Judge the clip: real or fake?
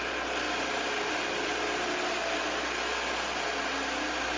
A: real